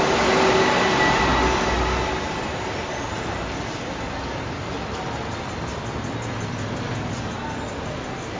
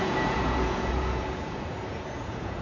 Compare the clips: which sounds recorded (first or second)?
first